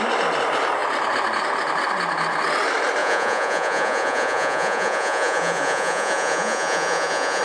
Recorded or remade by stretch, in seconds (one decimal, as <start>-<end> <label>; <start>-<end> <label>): 0.0-3.0 recorded; 3.0-7.4 remade